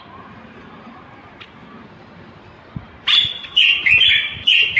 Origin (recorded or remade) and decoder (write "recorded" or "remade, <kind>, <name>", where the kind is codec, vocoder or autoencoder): recorded